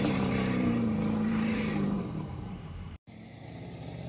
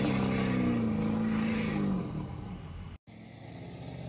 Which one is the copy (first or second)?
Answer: first